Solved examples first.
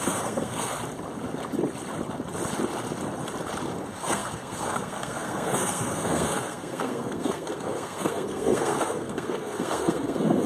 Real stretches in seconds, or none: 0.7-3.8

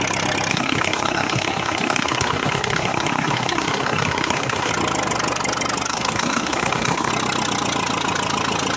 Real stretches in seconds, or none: 0.0-0.5; 4.7-5.9; 7.1-8.8

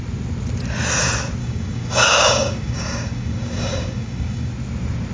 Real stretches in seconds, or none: 0.0-1.4; 4.5-5.1

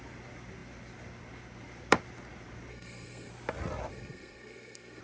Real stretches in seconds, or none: 0.0-2.7; 3.3-3.9

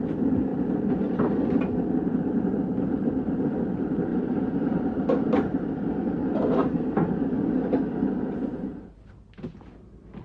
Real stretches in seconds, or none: 0.0-4.1; 5.7-6.6; 7.1-10.2

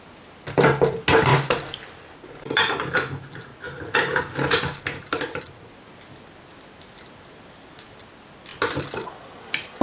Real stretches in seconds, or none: 0.0-1.3; 2.9-9.8

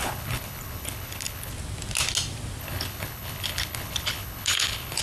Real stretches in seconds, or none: 1.5-2.6